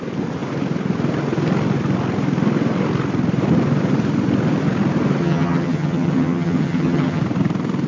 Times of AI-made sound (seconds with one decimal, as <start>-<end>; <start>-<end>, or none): 5.2-7.2